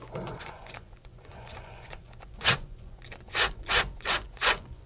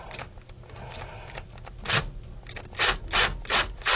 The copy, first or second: first